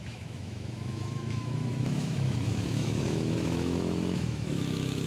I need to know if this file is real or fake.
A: fake